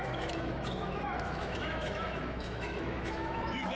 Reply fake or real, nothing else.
fake